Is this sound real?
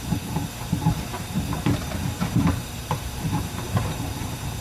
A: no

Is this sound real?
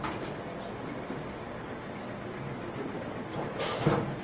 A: yes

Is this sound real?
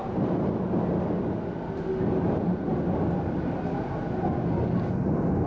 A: yes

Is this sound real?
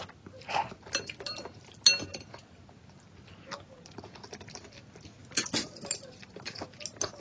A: yes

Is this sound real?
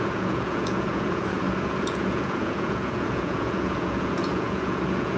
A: no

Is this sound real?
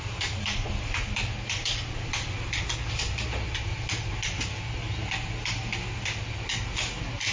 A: yes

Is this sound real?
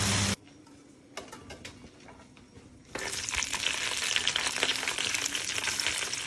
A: yes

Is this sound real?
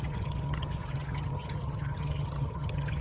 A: no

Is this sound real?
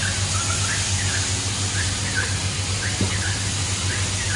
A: yes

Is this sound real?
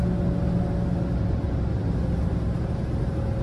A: yes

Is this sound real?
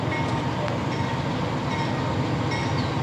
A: yes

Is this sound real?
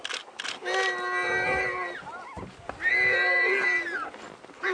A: yes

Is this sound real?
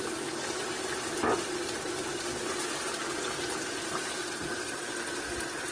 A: yes